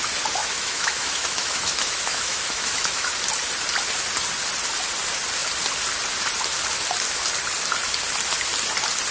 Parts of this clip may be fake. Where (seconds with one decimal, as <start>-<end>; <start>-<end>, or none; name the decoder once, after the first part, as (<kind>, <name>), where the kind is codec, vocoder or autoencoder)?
0.4-3.1 (autoencoder, DAC-VAE)